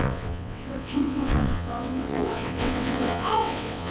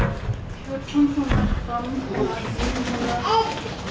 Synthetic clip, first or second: first